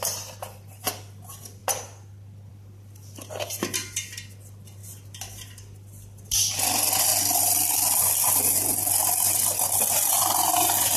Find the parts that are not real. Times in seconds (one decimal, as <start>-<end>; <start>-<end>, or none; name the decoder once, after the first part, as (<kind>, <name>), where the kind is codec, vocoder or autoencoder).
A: 0.0-1.6 (vocoder, BigVGAN v2); 2.5-11.0